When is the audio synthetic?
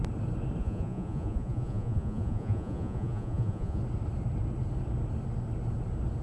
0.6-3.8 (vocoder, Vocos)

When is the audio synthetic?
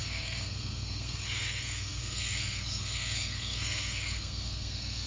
0.0-5.1 (codec, SNAC)